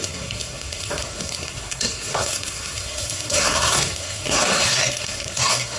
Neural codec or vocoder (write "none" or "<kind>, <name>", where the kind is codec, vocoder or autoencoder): codec, SNAC